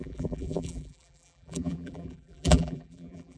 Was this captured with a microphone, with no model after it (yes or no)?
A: no